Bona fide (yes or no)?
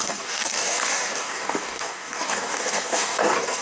no